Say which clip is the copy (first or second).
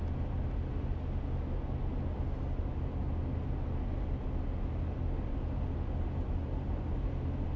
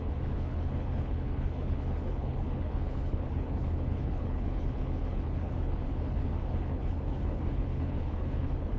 second